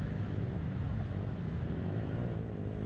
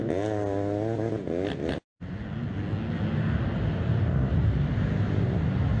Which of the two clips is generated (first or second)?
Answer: first